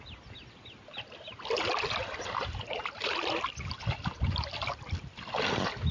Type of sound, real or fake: real